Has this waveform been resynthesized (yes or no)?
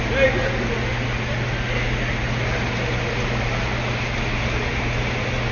no